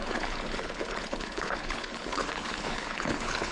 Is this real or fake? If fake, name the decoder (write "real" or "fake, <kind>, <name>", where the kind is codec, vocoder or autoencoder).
fake, codec, HILCodec